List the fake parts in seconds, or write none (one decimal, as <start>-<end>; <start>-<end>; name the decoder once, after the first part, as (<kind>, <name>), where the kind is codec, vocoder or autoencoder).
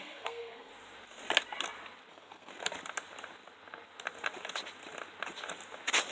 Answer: 0.0-0.7 (codec, SNAC); 2.1-2.5